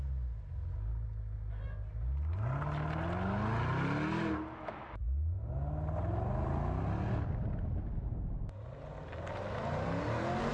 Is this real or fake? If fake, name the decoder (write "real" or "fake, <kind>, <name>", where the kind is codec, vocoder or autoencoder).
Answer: real